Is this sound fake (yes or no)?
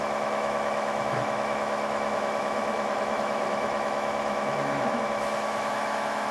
yes